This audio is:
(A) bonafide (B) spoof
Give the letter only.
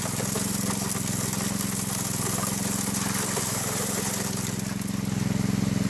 A